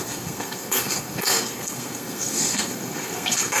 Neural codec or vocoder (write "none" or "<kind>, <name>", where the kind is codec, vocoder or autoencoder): codec, SNAC